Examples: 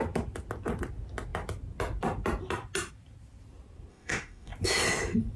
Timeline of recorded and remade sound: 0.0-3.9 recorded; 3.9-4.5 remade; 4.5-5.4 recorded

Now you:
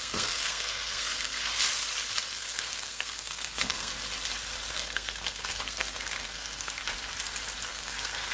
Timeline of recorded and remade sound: 0.0-1.5 remade; 1.5-2.2 recorded; 2.2-3.9 remade; 3.9-4.7 recorded; 4.7-6.8 remade; 6.8-7.7 recorded; 7.7-8.3 remade

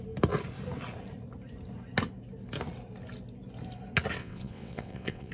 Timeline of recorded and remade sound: 0.0-4.2 recorded; 4.2-5.3 remade

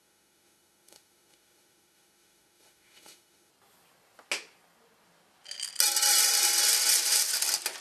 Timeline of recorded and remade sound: 0.0-3.5 remade; 3.5-7.8 recorded

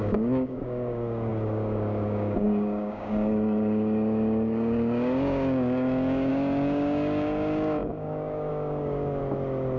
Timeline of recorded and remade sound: 0.0-9.2 remade; 9.2-9.8 recorded

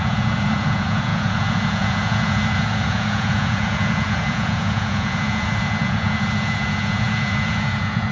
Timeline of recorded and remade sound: 0.0-8.1 remade